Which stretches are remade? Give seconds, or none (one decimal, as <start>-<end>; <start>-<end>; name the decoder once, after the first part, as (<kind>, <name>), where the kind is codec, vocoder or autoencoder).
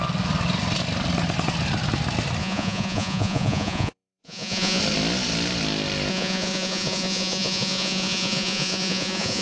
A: 2.4-4.8 (vocoder, Vocos); 6.1-9.4